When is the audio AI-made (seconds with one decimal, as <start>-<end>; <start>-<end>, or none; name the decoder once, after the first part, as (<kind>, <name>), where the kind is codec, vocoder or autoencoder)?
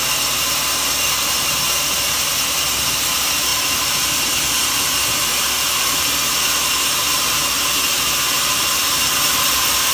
3.5-6.3 (vocoder, BigVGAN v2)